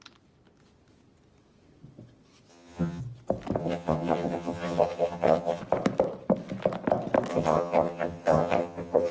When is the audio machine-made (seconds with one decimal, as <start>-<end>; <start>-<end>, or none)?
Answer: 2.5-3.0; 3.6-5.6; 7.3-9.1